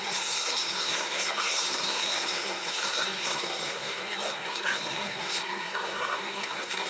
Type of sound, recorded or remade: remade